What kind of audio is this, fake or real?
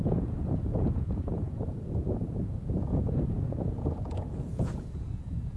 fake